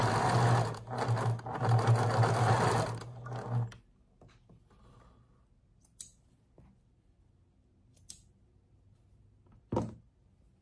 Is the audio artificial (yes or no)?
no